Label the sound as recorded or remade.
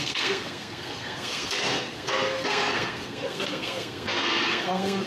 remade